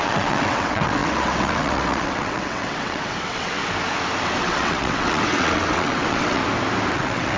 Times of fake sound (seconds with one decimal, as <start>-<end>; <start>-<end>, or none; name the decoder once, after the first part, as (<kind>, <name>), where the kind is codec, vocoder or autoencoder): 0.0-3.6 (vocoder, WaveNeXt); 4.4-6.4; 6.9-7.4